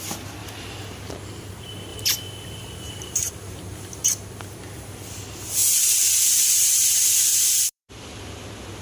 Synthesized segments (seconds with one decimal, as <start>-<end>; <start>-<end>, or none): 0.4-1.1; 1.9-3.3; 7.3-8.2